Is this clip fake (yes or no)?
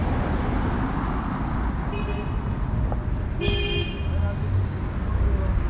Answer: no